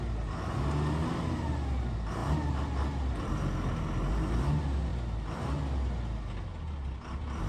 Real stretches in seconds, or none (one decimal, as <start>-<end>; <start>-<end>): 0.0-7.5